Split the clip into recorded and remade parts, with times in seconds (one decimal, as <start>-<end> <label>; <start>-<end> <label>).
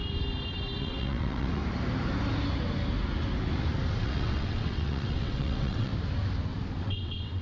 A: 0.0-0.8 recorded; 0.8-1.6 remade; 1.6-4.0 recorded; 4.0-5.9 remade; 5.9-6.8 recorded; 6.8-7.4 remade